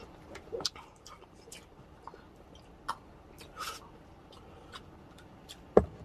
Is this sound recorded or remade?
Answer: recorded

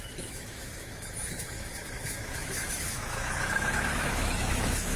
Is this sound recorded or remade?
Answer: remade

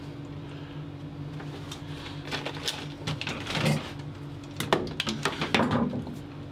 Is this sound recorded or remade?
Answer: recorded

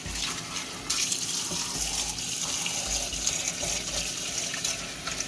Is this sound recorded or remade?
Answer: recorded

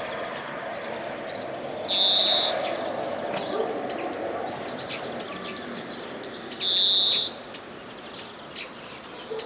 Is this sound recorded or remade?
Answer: recorded